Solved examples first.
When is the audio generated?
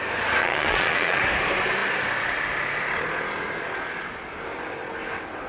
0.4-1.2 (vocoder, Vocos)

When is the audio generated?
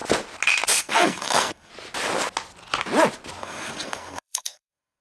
0.8-1.7 (codec, SNAC); 3.4-5.0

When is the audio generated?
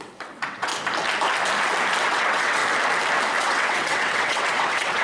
0.0-0.7 (vocoder, WaveNeXt); 2.0-2.6; 3.4-5.0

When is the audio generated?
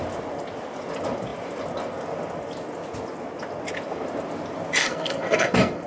4.8-5.9 (codec, SNAC)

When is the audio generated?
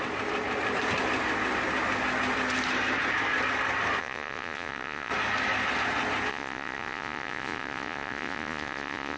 4.0-5.1 (vocoder, Vocos); 6.3-9.2